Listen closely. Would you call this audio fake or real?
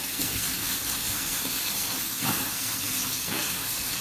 fake